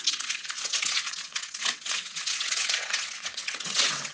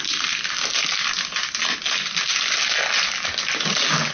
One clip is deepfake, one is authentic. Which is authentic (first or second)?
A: second